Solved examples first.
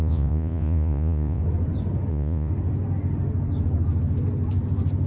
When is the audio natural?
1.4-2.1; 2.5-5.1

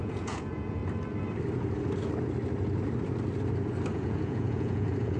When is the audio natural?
0.8-3.9

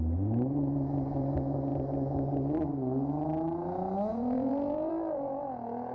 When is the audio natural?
0.0-4.1; 4.9-5.9

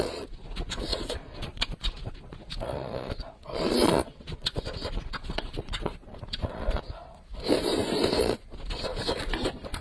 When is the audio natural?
7.3-8.2; 8.9-9.8

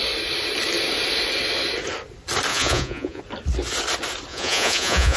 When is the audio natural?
0.0-2.5; 3.2-4.3

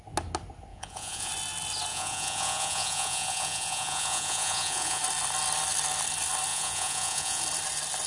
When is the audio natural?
0.0-0.7; 1.3-1.9; 5.0-6.5; 7.4-8.1

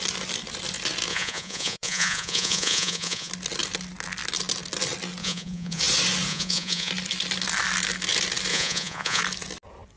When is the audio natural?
0.0-1.1; 3.3-5.2; 5.8-6.3; 6.9-8.5; 9.2-10.0